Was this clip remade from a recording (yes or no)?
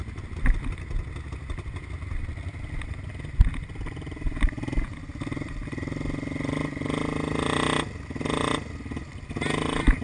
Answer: no